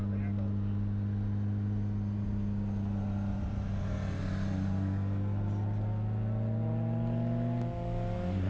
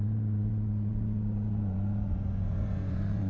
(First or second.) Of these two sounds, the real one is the first